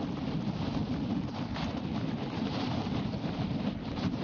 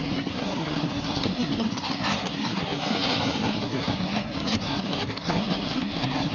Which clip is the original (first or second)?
first